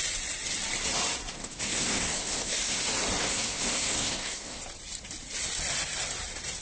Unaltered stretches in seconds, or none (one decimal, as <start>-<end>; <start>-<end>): 0.0-1.4; 2.8-3.2; 4.6-6.6